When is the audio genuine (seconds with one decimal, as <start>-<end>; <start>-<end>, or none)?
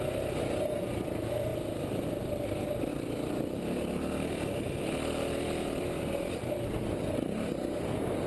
0.0-1.5; 2.2-8.3